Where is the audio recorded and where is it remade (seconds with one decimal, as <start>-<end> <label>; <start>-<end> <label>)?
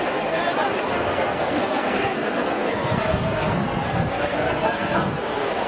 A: 0.0-0.4 remade; 0.4-0.9 recorded; 0.9-5.7 remade